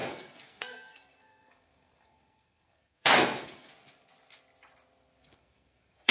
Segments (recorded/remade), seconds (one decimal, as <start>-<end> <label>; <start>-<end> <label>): 0.0-3.7 remade; 3.7-5.2 recorded; 5.2-6.1 remade